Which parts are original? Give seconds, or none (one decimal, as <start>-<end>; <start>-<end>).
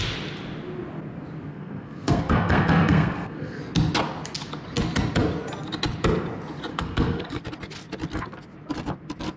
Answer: 0.0-1.5; 3.6-6.7; 7.4-9.4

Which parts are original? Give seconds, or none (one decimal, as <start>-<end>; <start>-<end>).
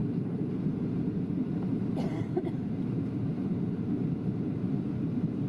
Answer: 1.5-1.9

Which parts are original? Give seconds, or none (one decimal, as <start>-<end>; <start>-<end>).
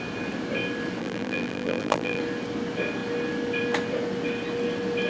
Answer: 0.0-1.0; 2.2-5.1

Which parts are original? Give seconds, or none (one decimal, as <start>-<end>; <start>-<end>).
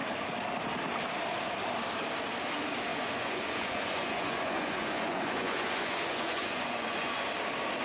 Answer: 0.0-2.9; 7.3-7.8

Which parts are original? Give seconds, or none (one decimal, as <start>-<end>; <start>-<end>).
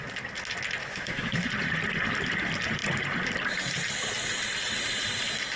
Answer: 0.0-0.8; 1.5-5.6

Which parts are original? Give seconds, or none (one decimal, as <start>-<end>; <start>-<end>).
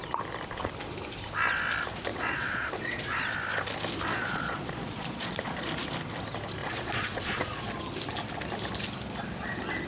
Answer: 0.0-2.1; 3.2-4.1; 5.7-6.6; 7.8-9.9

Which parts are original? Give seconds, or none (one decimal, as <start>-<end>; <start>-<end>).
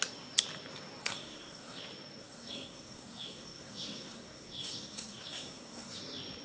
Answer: 0.0-1.0; 1.8-2.2; 6.0-6.4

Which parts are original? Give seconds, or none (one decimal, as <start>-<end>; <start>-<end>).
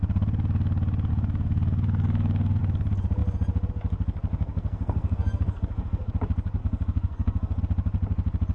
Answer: 0.0-1.1; 2.6-4.3; 6.1-6.6; 7.6-8.5